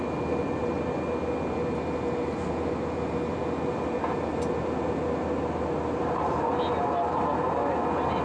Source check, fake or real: real